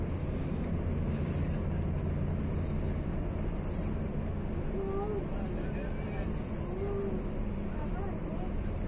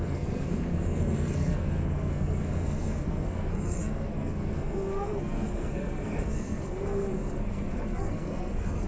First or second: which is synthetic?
second